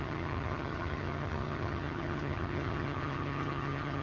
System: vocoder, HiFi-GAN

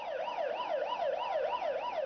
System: none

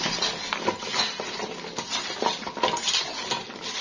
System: none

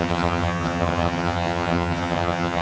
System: vocoder, HiFi-GAN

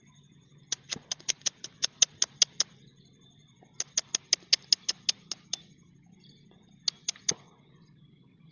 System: none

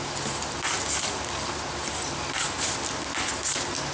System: none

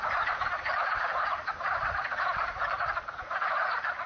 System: none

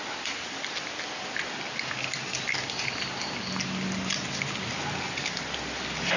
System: none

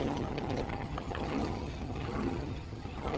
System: vocoder, HiFi-GAN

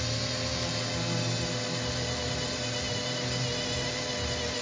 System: none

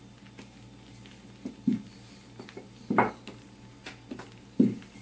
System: none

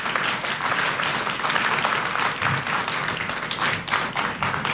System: none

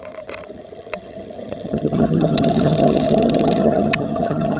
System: vocoder, HiFi-GAN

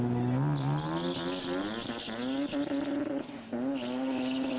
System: none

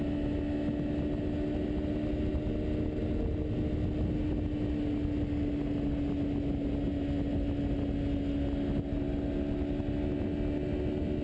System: none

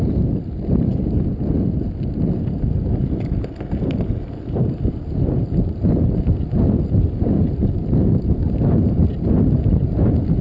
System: none